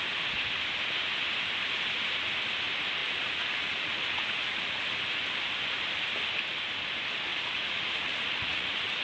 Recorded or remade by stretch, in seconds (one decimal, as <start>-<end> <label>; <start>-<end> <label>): 0.0-3.0 recorded; 3.0-4.8 remade; 4.8-7.3 recorded; 7.3-9.0 remade